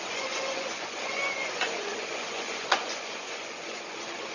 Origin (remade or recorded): remade